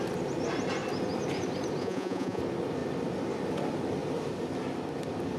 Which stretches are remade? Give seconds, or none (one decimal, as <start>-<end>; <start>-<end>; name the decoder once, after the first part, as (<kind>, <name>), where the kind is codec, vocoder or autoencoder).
1.8-2.4 (vocoder, Vocos)

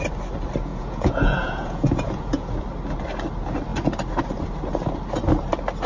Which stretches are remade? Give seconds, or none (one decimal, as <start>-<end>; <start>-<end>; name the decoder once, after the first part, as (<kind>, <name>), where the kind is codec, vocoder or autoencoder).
0.7-2.5 (vocoder, Vocos)

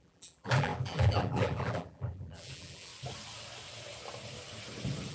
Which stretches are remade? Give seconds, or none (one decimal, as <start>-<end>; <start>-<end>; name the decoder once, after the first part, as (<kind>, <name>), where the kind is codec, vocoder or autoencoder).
0.0-2.9 (vocoder, BigVGAN v2)